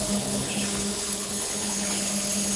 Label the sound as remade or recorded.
remade